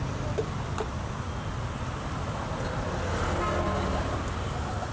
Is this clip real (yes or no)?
yes